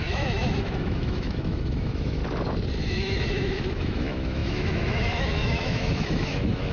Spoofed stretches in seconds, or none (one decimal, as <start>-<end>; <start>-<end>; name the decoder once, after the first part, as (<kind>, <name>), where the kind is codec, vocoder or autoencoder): 0.0-2.2 (autoencoder, DAC-VAE); 2.9-6.7